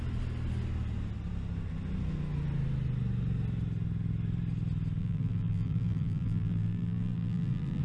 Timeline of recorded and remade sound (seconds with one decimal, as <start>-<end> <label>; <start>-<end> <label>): 0.0-5.0 recorded; 5.0-7.8 remade